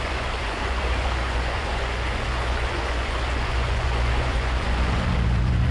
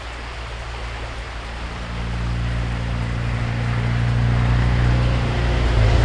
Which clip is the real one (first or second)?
second